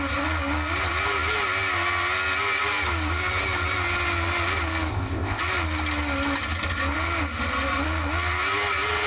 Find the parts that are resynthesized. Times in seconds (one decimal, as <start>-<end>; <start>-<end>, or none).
4.9-5.4